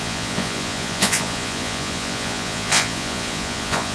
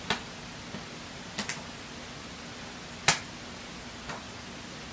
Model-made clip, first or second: first